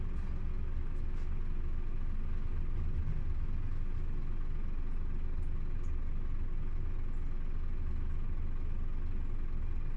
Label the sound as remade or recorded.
recorded